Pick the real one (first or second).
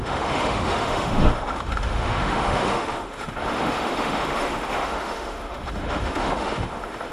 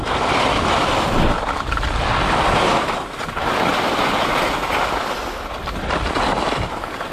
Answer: second